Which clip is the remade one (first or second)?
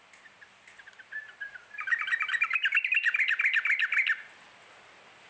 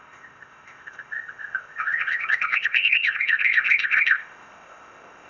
second